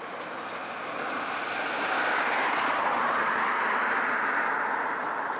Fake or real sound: fake